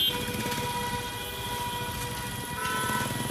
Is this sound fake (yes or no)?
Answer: no